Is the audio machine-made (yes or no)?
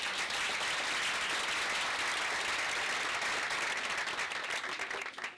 no